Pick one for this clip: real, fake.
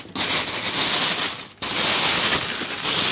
real